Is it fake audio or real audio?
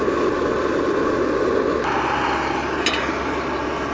real